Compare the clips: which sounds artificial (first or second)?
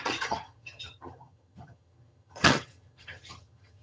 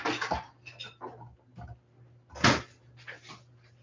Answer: first